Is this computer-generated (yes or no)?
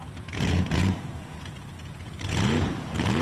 yes